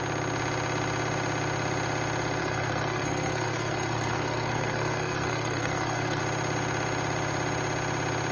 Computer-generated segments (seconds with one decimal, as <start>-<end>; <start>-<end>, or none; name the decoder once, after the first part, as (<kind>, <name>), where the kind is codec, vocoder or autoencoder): 2.4-6.2 (codec, SNAC)